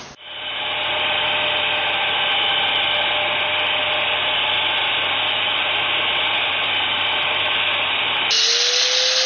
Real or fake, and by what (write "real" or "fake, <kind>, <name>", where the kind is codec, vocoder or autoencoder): real